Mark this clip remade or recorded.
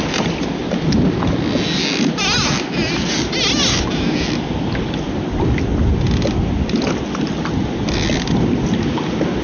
recorded